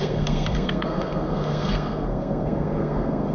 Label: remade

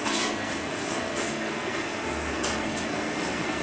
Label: remade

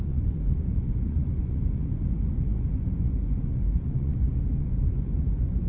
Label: remade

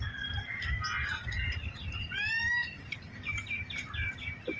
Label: recorded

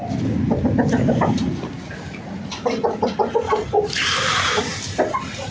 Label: recorded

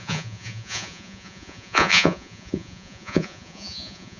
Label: remade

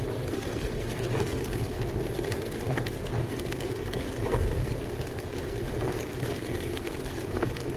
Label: remade